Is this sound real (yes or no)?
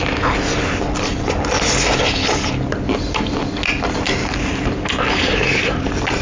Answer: yes